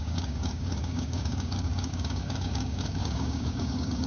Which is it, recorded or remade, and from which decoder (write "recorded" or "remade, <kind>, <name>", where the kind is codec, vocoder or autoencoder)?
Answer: remade, codec, DAC